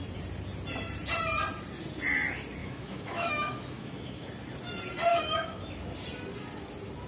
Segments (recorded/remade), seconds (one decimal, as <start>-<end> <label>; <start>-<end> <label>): 0.0-2.6 recorded; 2.6-4.3 remade; 4.3-5.1 recorded; 5.1-5.8 remade; 5.8-7.1 recorded